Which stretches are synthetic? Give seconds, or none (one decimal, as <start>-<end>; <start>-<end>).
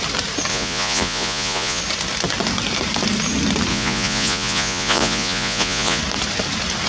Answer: 0.5-1.8; 3.7-6.0